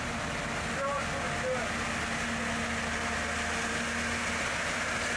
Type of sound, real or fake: real